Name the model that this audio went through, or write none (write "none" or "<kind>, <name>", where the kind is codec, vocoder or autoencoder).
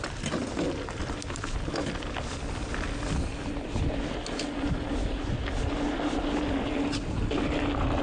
none